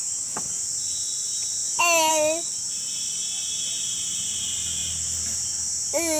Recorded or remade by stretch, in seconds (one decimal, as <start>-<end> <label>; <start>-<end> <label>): 0.0-6.2 recorded